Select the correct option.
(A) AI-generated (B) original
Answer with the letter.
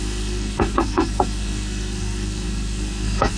A